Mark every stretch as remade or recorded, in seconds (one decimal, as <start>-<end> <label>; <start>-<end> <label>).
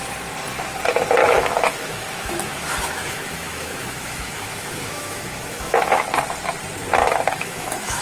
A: 0.0-1.2 recorded; 1.2-6.0 remade; 6.0-7.0 recorded; 7.0-8.0 remade